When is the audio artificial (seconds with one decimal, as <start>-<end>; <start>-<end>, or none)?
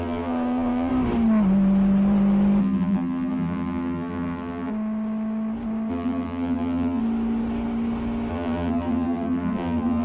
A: 0.0-0.9; 2.6-4.7; 5.9-7.0; 8.3-10.0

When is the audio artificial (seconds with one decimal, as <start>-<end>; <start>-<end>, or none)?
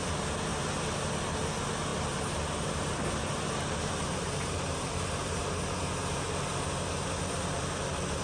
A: 1.9-5.4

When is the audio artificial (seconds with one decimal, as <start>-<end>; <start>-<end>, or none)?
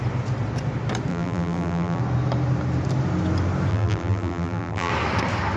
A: 1.1-2.0; 3.7-4.9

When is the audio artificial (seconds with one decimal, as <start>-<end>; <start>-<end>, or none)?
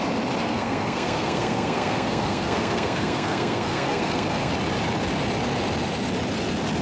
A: 0.4-4.5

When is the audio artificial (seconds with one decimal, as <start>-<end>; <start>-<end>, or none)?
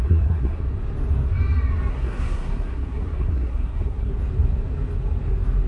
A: 0.0-0.7; 1.9-4.1